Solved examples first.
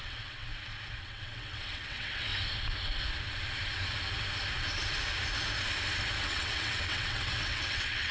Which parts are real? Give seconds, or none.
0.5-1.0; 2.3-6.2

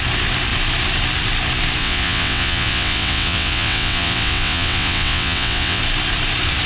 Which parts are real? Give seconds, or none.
0.0-1.8; 5.8-6.7

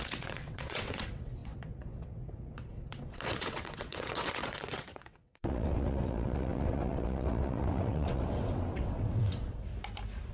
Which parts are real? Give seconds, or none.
9.7-10.3

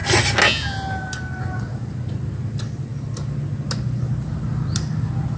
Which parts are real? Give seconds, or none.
0.0-5.4

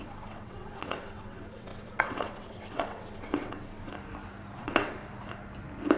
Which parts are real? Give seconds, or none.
3.9-4.6; 5.0-6.0

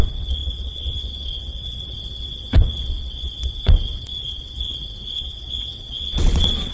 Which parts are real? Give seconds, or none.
none

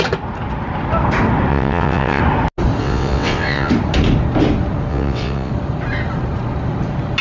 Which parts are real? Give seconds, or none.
0.0-1.5; 2.2-2.8; 3.7-4.9; 5.5-7.2